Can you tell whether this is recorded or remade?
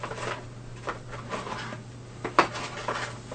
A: recorded